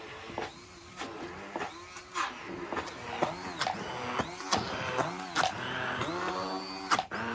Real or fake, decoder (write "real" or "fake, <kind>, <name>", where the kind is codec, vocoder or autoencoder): real